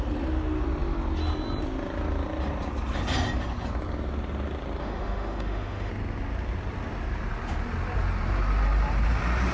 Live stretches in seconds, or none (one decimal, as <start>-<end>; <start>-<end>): 0.0-4.8; 5.9-9.5